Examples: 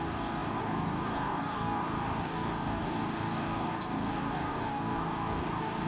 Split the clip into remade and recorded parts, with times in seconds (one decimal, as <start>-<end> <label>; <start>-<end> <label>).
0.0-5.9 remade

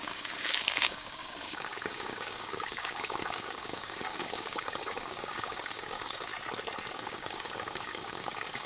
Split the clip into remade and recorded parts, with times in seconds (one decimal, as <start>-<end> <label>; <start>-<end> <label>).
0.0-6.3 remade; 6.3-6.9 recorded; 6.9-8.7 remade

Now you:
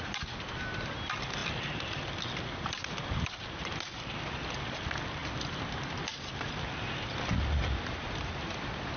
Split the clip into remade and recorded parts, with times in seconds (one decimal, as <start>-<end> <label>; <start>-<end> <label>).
0.0-9.0 recorded

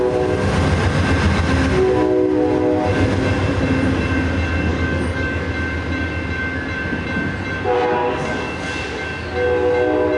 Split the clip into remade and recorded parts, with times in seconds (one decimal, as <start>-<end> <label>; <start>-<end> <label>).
0.0-4.7 recorded; 4.7-5.5 remade; 5.5-8.0 recorded; 8.0-8.7 remade; 8.7-10.2 recorded

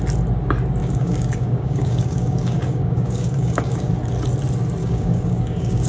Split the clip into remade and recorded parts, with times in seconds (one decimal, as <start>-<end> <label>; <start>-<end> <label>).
0.0-0.8 recorded; 0.8-3.9 remade; 3.9-4.8 recorded; 4.8-5.9 remade

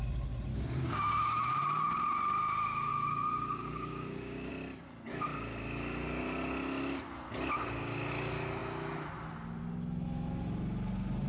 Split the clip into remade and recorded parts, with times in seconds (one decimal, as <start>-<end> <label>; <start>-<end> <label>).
0.0-0.5 recorded; 0.5-1.5 remade; 1.5-2.9 recorded; 2.9-4.5 remade; 4.5-11.3 recorded

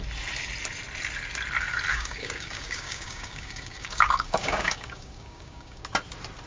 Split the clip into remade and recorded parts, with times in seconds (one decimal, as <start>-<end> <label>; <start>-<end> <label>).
0.0-1.9 recorded; 1.9-5.8 remade; 5.8-6.5 recorded

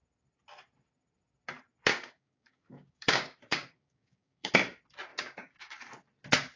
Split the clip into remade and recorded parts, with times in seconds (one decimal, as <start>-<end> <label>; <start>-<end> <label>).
0.0-1.9 recorded; 1.9-4.5 remade; 4.5-5.1 recorded; 5.1-5.8 remade; 5.8-6.6 recorded